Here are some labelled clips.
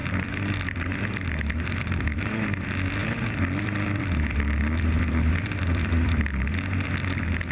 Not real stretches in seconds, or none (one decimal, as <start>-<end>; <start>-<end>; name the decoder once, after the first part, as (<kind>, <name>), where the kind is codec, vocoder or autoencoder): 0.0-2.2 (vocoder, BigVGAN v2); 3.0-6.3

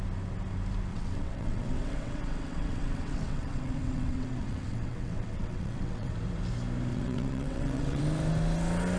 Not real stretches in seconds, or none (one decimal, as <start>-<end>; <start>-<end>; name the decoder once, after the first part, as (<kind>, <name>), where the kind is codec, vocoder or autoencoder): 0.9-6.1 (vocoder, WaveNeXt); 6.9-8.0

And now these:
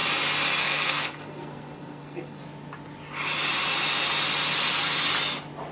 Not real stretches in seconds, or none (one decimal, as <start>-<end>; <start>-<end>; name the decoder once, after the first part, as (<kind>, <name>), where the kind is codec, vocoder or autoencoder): 0.6-2.4 (codec, SNAC)